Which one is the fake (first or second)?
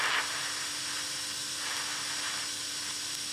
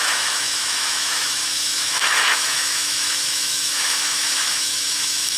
second